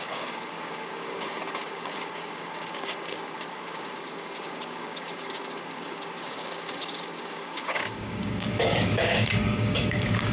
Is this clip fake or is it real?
fake